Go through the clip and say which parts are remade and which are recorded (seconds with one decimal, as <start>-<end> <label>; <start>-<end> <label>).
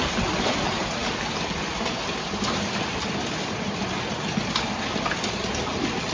0.0-6.1 recorded